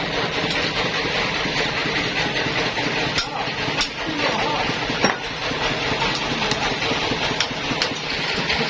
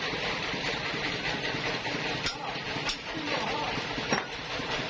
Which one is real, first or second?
first